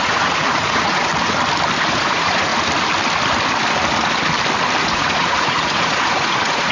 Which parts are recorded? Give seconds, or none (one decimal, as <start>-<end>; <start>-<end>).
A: 1.1-1.9; 2.5-4.8